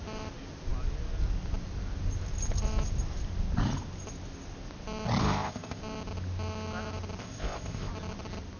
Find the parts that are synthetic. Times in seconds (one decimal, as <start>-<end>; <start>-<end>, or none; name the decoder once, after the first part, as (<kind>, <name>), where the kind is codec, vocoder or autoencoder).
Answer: 5.2-5.8 (codec, ZipCodec); 7.2-7.9